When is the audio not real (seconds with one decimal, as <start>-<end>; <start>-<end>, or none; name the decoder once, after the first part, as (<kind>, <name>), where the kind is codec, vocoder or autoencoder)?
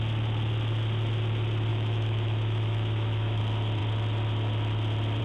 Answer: 1.7-3.4 (autoencoder, DAC-VAE)